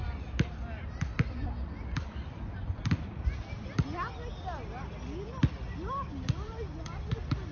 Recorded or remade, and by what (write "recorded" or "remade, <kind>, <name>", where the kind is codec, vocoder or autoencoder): recorded